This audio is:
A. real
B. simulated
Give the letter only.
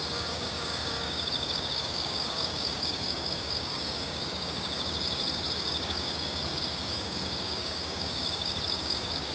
B